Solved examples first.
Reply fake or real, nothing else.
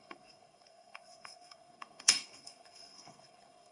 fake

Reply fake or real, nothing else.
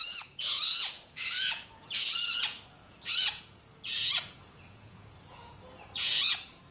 fake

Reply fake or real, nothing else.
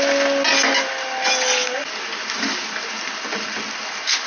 real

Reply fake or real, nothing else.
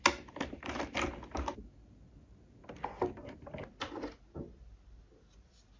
real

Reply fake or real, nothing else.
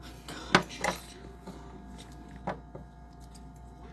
real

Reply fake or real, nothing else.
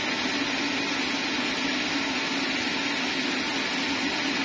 real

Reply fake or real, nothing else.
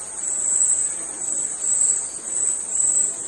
real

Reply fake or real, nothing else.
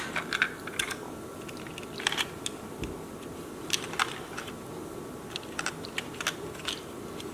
real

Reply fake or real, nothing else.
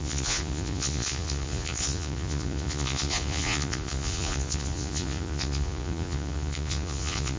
fake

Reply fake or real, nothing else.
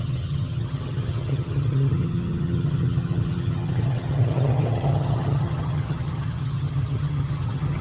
fake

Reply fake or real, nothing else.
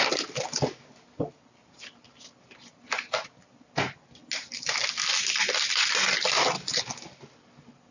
real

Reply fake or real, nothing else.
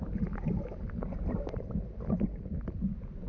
real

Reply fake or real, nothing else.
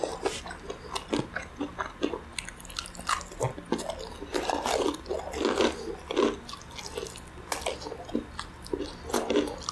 real